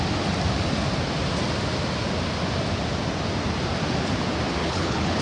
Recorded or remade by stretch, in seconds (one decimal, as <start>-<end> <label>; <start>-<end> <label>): 0.0-4.6 recorded; 4.6-5.2 remade